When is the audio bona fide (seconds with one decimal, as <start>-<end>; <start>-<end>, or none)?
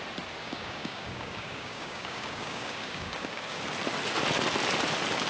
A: 0.0-0.4; 3.6-5.3